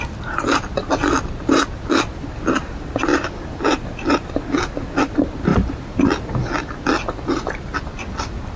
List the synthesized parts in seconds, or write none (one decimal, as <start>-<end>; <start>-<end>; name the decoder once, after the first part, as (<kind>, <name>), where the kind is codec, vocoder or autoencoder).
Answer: 3.1-3.6 (vocoder, BigVGAN v2); 5.5-6.0